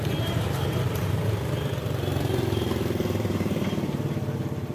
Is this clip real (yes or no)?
no